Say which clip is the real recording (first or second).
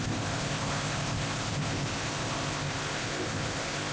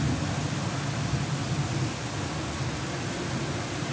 second